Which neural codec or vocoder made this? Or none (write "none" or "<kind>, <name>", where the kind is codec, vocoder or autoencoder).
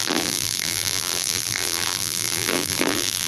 vocoder, BigVGAN v2